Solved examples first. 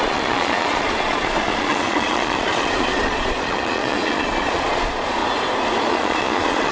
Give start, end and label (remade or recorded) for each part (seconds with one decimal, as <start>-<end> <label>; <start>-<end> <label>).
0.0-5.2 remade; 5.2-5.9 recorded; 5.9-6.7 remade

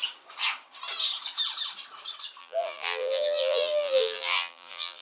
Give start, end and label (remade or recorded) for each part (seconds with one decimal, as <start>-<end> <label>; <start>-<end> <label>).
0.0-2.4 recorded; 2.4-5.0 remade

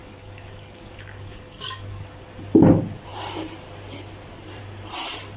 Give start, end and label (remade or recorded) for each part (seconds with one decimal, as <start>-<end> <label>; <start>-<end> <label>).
0.0-2.2 remade; 2.2-5.4 recorded

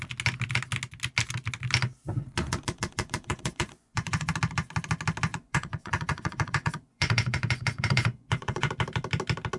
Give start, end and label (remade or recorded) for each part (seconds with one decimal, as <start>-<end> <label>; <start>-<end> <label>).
0.0-2.1 recorded; 2.1-4.3 remade; 4.3-5.3 recorded; 5.3-8.7 remade; 8.7-9.6 recorded

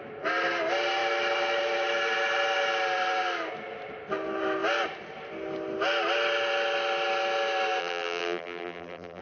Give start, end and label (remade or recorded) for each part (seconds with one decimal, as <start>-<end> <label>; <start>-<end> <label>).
0.0-7.8 recorded; 7.8-9.2 remade